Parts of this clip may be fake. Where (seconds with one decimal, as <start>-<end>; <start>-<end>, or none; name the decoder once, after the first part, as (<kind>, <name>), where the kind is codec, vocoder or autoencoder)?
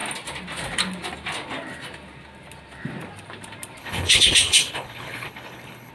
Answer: 3.8-5.9 (codec, HILCodec)